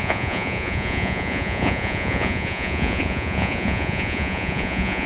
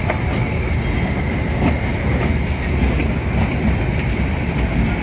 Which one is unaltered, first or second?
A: second